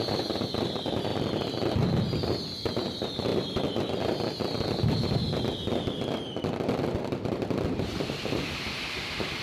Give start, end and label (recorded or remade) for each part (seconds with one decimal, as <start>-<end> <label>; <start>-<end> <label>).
0.0-1.1 recorded; 1.1-1.8 remade; 1.8-3.3 recorded; 3.3-8.1 remade; 8.1-9.4 recorded